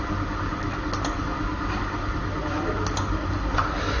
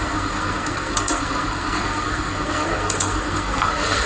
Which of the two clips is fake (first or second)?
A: second